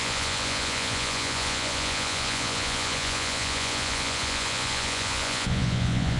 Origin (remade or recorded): remade